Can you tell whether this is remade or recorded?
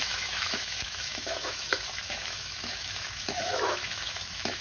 remade